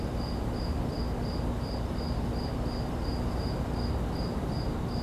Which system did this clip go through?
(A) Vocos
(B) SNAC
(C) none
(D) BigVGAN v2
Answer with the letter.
C